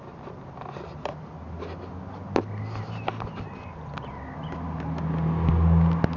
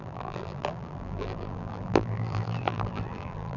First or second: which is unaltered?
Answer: first